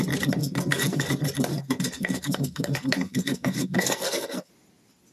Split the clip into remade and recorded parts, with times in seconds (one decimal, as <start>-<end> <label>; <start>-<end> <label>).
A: 0.0-0.4 recorded; 0.4-1.1 remade; 1.1-1.5 recorded; 1.5-4.5 remade; 4.5-5.1 recorded